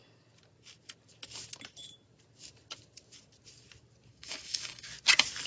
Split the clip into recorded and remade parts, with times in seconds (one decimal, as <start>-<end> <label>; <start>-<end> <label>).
0.0-4.1 recorded; 4.1-4.9 remade; 4.9-5.5 recorded

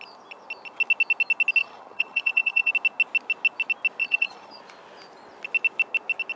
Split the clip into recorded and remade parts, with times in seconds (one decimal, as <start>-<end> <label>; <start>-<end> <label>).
0.0-1.6 recorded; 1.6-2.7 remade; 2.7-4.0 recorded; 4.0-4.6 remade; 4.6-6.4 recorded

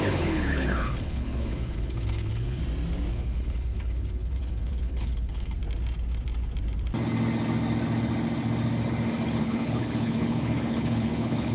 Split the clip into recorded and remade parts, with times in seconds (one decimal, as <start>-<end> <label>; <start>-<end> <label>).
0.0-2.6 remade; 2.6-3.1 recorded; 3.1-5.6 remade; 5.6-9.4 recorded; 9.4-11.5 remade

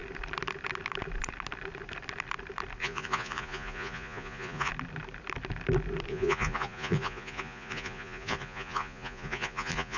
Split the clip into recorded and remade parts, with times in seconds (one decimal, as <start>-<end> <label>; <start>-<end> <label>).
0.0-2.8 recorded; 2.8-4.7 remade; 4.7-6.1 recorded; 6.1-10.0 remade

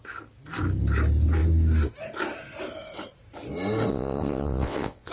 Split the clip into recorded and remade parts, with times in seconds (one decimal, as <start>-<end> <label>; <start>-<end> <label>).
0.0-3.9 recorded; 3.9-5.1 remade

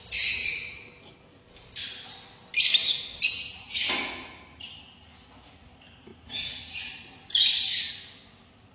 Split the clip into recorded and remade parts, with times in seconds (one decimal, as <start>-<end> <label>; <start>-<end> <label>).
0.0-8.7 recorded

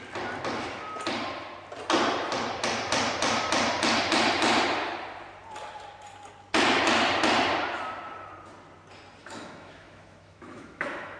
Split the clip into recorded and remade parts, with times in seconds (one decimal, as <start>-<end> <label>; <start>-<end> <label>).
0.0-9.2 recorded; 9.2-11.2 remade

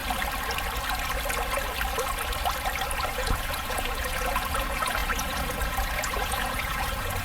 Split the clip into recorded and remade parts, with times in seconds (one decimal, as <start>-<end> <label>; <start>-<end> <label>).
0.0-3.1 recorded; 3.1-7.2 remade